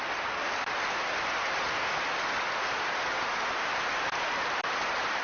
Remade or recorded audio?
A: recorded